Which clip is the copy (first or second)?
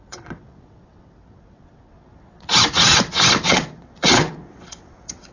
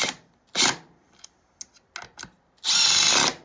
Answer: first